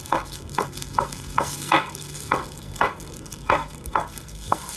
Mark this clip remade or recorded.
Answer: remade